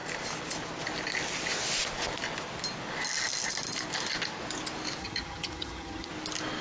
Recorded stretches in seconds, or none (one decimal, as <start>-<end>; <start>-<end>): 0.0-5.0; 6.1-6.6